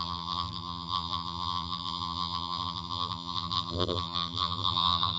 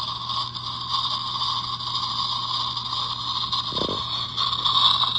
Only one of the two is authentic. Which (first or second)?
second